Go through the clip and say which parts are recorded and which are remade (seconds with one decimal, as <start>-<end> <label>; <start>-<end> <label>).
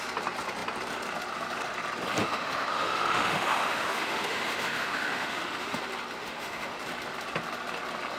0.0-2.2 recorded; 2.2-5.8 remade; 5.8-6.2 recorded; 6.2-6.8 remade; 6.8-8.2 recorded